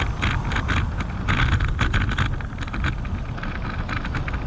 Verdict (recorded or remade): recorded